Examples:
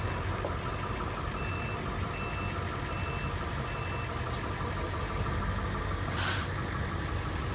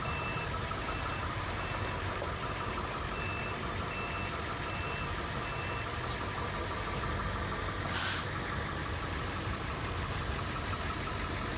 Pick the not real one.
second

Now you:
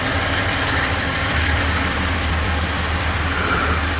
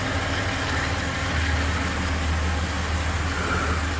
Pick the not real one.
first